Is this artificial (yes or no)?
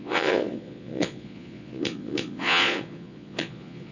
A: yes